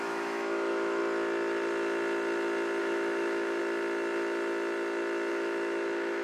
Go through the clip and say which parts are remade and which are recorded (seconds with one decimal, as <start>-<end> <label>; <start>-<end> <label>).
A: 0.0-1.0 remade; 1.0-2.8 recorded; 2.8-3.6 remade; 3.6-5.3 recorded; 5.3-6.2 remade